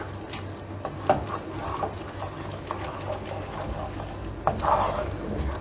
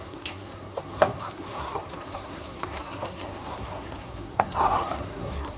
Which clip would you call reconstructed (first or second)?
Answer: second